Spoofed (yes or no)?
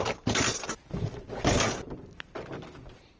no